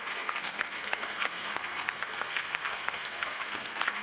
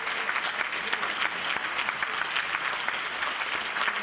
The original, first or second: second